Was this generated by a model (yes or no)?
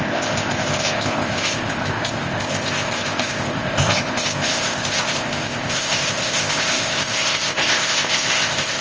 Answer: yes